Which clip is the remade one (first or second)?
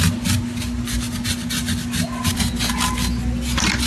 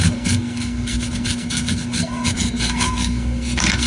second